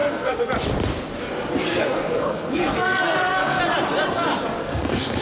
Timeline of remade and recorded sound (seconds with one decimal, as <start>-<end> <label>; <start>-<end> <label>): 0.0-0.5 remade; 0.5-1.6 recorded; 1.6-3.6 remade; 3.6-4.6 recorded; 4.6-5.2 remade